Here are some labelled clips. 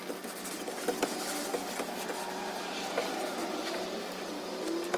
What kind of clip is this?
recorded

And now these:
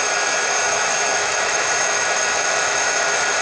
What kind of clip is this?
remade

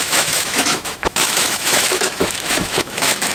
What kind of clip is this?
remade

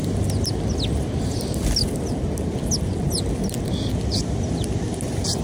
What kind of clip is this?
recorded